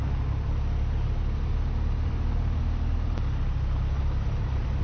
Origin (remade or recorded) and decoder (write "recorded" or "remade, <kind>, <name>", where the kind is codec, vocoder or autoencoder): recorded